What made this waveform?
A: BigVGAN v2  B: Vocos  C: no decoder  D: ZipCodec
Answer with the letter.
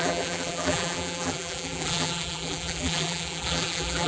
A